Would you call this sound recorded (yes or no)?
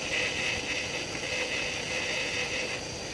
yes